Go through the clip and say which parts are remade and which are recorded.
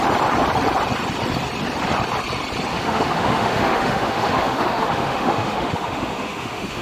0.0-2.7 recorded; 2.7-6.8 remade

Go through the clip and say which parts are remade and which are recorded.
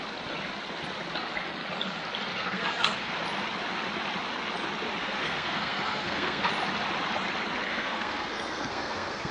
0.0-2.3 recorded; 2.3-3.1 remade; 3.1-5.0 recorded; 5.0-6.5 remade; 6.5-7.7 recorded; 7.7-9.3 remade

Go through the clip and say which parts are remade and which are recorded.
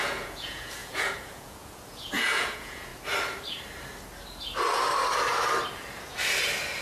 0.0-2.9 remade; 2.9-6.8 recorded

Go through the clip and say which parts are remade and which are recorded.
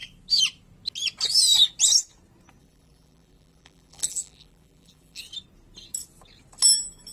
0.0-2.6 recorded; 2.6-5.2 remade; 5.2-7.1 recorded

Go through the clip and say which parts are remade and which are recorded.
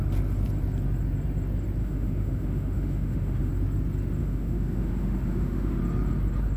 0.0-1.8 recorded; 1.8-3.5 remade; 3.5-4.2 recorded; 4.2-5.8 remade; 5.8-6.6 recorded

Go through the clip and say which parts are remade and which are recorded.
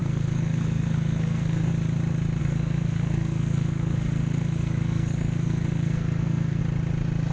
0.0-1.7 remade; 1.7-2.4 recorded; 2.4-6.6 remade; 6.6-7.3 recorded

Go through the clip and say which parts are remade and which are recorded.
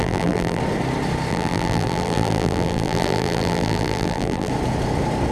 0.0-0.6 remade; 0.6-1.3 recorded; 1.3-4.5 remade; 4.5-5.3 recorded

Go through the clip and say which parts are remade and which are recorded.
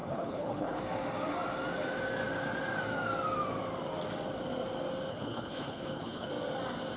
0.0-0.8 remade; 0.8-5.1 recorded; 5.1-6.3 remade; 6.3-7.0 recorded